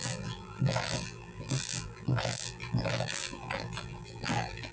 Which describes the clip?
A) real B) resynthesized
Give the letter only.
B